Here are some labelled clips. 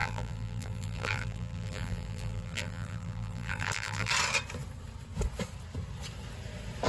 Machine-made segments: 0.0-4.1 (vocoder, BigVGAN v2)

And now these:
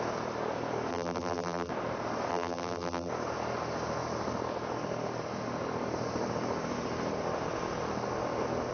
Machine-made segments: 0.9-1.7 (vocoder, BigVGAN v2); 2.3-3.1

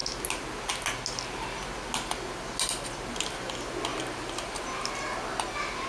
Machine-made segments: 3.9-4.5 (vocoder, BigVGAN v2)

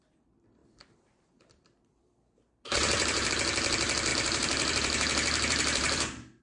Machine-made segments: 0.6-3.3 (vocoder, BigVGAN v2); 4.1-6.4

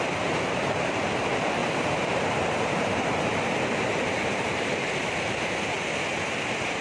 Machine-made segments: 1.6-5.0 (vocoder, BigVGAN v2)

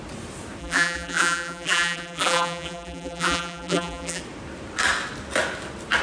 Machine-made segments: 0.6-4.2 (vocoder, BigVGAN v2)

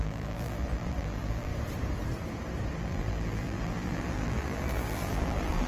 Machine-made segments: 0.0-1.5 (vocoder, BigVGAN v2); 2.8-5.7